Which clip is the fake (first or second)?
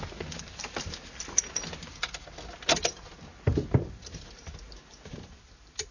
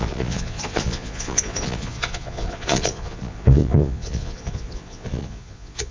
second